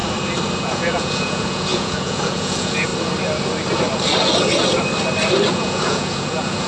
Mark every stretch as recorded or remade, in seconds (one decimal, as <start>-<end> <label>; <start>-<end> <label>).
0.0-0.6 recorded; 0.6-2.9 remade; 2.9-5.5 recorded; 5.5-6.7 remade